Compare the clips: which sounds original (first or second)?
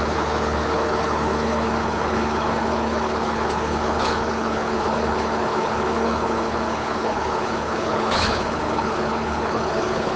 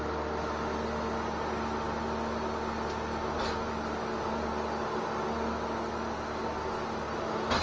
second